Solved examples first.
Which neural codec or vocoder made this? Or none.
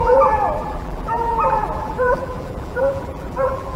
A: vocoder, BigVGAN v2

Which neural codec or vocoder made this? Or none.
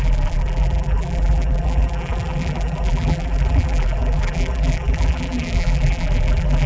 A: vocoder, BigVGAN v2